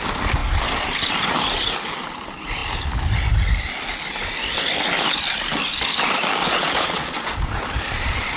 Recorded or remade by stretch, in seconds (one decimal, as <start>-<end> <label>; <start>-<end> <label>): 0.0-6.4 recorded; 6.4-7.6 remade; 7.6-8.4 recorded